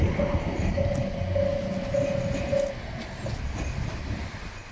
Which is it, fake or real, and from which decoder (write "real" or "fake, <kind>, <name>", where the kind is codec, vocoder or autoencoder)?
real